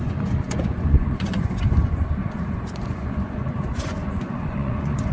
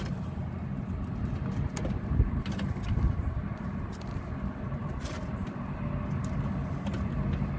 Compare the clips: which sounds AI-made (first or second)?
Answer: first